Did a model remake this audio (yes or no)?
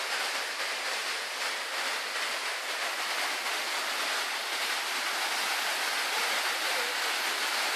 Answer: no